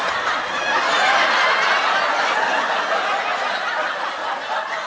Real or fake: real